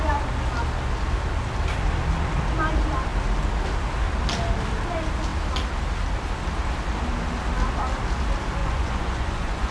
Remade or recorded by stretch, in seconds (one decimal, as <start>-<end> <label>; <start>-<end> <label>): 0.0-8.6 recorded; 8.6-9.7 remade